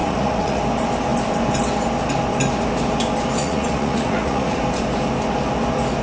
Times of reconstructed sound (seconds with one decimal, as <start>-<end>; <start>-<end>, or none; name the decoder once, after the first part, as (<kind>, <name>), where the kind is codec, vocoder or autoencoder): 0.0-0.6 (vocoder, Vocos); 3.4-4.6